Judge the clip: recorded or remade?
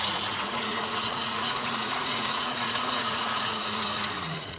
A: remade